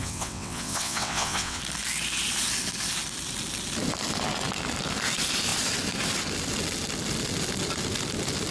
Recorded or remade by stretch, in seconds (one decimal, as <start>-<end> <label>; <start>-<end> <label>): 0.0-1.6 remade; 1.6-8.5 recorded